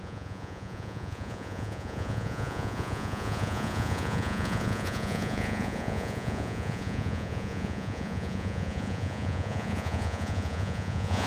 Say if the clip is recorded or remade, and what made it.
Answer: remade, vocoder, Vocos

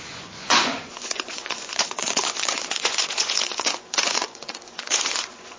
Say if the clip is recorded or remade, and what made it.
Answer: remade, vocoder, Vocos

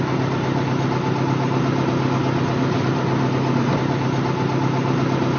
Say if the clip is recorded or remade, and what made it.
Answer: recorded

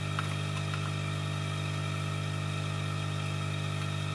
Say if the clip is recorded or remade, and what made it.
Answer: recorded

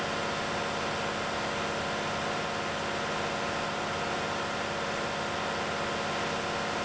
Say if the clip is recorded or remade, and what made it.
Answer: recorded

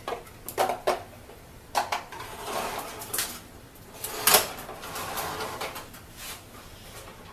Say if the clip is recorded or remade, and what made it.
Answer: recorded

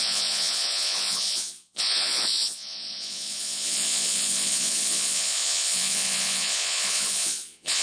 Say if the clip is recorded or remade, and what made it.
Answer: remade, vocoder, Vocos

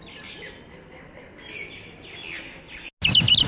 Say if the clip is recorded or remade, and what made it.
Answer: recorded